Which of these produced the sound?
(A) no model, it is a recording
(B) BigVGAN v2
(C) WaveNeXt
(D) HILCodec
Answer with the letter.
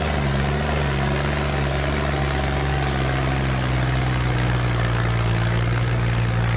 A